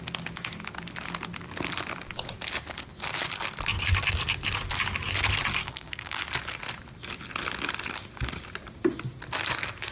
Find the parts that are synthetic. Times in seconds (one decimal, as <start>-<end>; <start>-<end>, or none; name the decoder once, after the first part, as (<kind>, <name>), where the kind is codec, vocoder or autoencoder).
5.6-6.2 (codec, DAC)